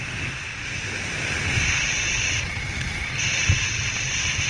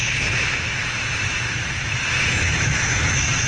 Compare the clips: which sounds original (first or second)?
first